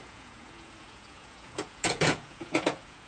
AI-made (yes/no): yes